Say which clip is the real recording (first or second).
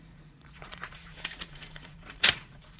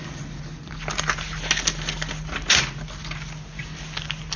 second